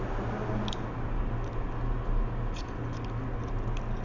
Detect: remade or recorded recorded